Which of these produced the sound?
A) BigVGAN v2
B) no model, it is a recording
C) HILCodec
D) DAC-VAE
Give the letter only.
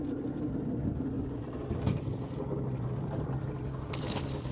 B